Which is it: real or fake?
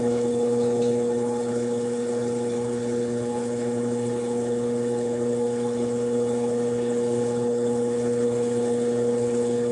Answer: fake